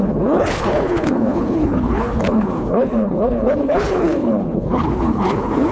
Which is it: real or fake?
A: fake